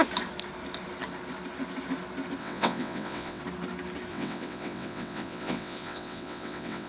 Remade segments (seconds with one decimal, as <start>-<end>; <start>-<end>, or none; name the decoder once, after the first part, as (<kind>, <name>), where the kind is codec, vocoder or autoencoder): 2.4-3.4 (vocoder, WaveNeXt); 4.1-6.9